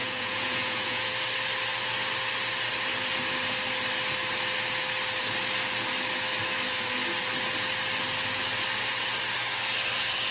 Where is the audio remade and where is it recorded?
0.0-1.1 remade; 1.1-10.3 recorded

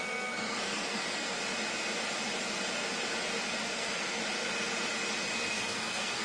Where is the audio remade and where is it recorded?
0.0-1.4 remade; 1.4-3.6 recorded; 3.6-4.2 remade; 4.2-5.5 recorded; 5.5-6.2 remade

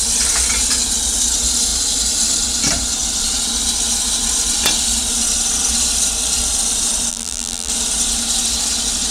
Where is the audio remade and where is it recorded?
0.0-7.1 recorded; 7.1-7.7 remade; 7.7-9.1 recorded

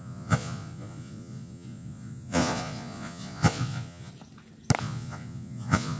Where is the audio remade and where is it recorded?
0.0-4.1 remade; 4.1-4.8 recorded; 4.8-6.0 remade